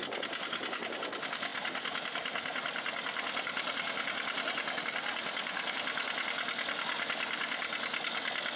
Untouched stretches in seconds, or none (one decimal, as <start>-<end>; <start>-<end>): 0.0-8.6